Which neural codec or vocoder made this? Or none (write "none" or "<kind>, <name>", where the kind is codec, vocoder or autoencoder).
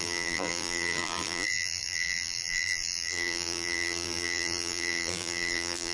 vocoder, BigVGAN v2